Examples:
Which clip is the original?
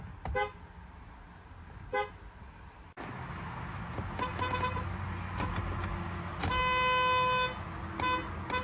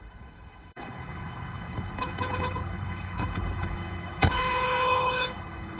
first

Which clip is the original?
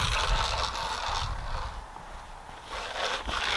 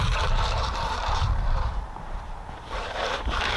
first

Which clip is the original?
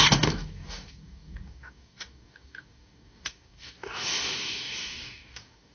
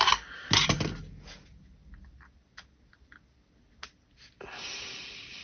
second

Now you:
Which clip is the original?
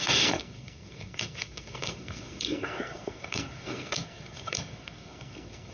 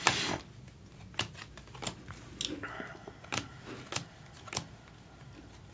second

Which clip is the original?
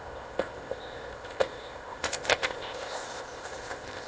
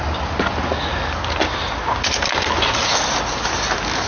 second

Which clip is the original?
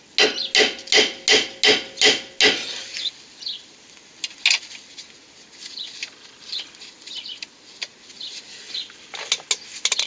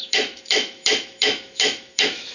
first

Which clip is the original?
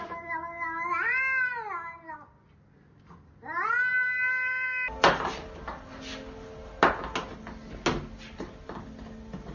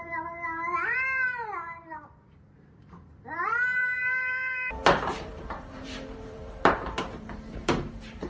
first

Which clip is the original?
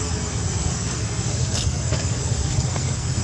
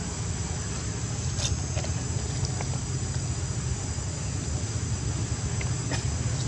second